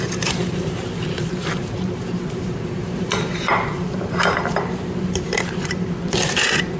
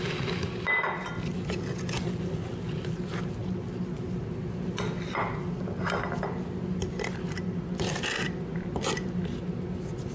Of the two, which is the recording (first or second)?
second